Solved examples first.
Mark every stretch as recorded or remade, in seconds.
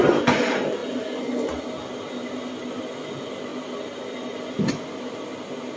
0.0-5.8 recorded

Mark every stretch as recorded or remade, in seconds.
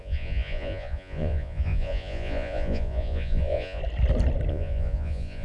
0.0-3.8 remade; 3.8-4.5 recorded; 4.5-5.4 remade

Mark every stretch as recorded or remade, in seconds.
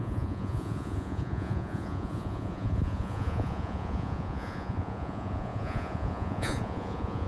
0.0-7.3 remade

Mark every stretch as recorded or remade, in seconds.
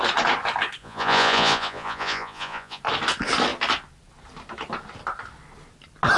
0.0-0.8 recorded; 0.8-2.8 remade; 2.8-6.2 recorded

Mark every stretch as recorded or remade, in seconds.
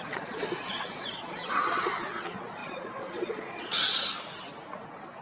0.0-4.1 remade; 4.1-5.2 recorded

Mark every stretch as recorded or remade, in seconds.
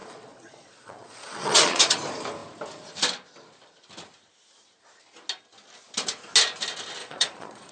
0.0-2.0 remade; 2.0-7.0 recorded; 7.0-7.7 remade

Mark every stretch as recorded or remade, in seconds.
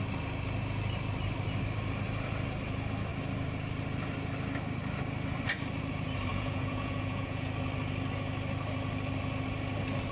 0.0-6.3 recorded; 6.3-7.5 remade; 7.5-10.1 recorded